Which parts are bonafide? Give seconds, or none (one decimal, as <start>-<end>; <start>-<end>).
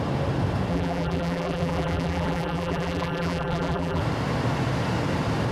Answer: 0.0-0.7; 4.0-5.5